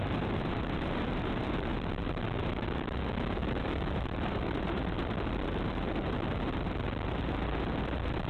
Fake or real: fake